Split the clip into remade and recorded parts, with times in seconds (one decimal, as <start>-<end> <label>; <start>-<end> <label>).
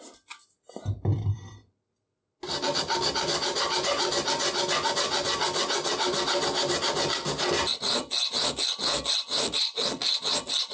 0.0-10.7 recorded